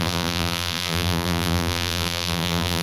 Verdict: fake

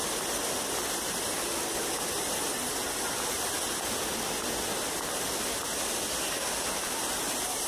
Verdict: real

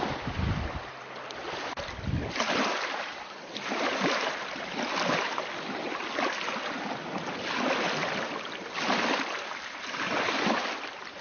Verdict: real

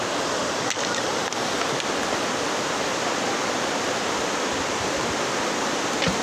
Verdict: real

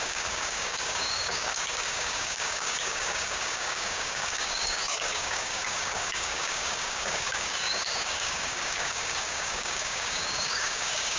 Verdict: fake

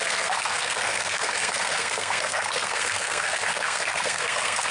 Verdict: fake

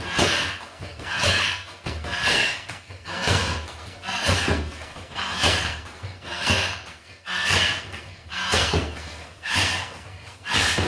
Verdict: fake